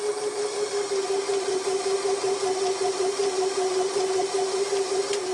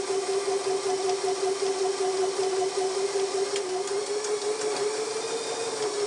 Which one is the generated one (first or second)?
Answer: first